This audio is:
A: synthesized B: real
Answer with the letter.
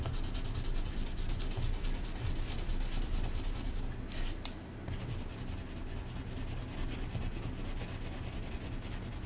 B